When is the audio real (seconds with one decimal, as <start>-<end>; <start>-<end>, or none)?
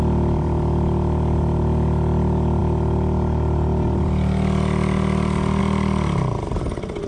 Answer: 0.0-7.1